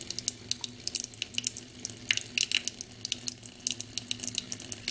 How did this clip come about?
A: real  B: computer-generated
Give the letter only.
A